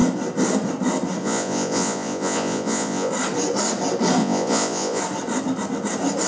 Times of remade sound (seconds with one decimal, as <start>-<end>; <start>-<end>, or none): 1.2-3.1; 4.2-5.0